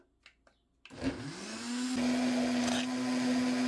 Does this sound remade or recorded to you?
recorded